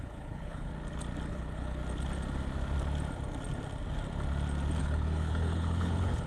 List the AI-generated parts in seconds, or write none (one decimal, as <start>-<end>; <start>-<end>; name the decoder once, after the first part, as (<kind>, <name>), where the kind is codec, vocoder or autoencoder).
0.0-0.7 (codec, HILCodec); 1.3-1.8; 4.8-6.3